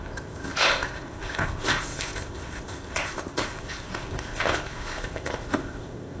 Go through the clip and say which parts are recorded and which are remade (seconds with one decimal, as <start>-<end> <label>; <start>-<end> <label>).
0.0-6.2 remade